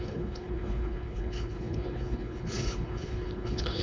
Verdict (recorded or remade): remade